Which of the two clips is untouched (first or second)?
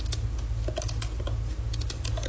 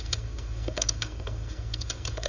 first